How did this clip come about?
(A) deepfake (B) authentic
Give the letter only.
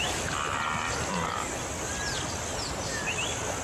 B